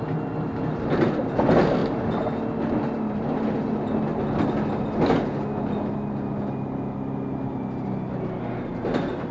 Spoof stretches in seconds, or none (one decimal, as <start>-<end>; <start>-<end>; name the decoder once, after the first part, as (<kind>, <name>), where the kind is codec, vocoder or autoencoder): none